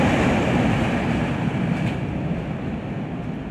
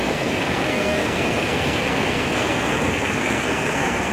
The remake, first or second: second